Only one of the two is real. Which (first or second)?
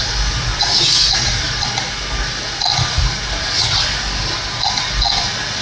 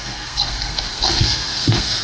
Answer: first